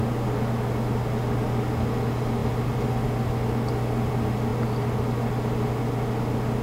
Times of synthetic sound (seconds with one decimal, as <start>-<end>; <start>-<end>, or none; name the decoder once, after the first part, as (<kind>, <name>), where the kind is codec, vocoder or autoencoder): none